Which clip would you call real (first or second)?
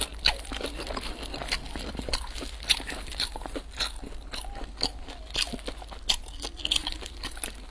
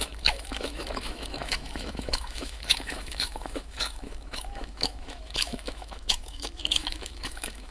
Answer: first